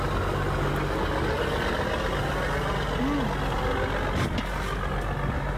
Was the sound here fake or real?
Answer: real